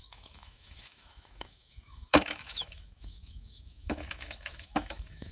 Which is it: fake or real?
fake